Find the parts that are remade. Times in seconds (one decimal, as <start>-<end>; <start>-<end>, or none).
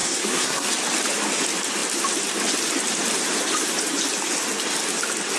0.0-0.7